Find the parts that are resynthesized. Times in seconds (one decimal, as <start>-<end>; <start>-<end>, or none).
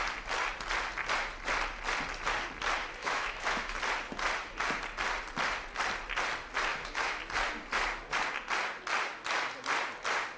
3.0-3.8; 6.7-7.2